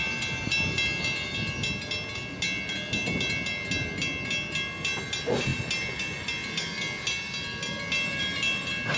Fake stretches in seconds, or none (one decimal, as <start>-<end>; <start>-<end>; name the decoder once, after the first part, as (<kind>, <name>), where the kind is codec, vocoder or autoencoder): none